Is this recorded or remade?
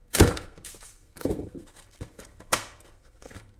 remade